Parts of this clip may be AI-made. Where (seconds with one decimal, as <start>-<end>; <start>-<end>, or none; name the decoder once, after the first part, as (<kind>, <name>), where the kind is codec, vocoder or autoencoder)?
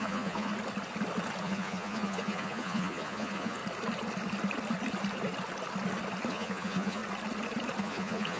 0.0-0.5 (vocoder, Vocos); 1.4-3.6; 6.3-7.0; 7.8-8.4